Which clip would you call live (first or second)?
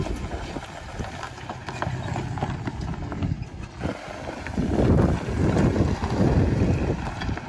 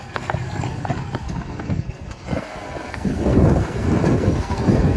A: first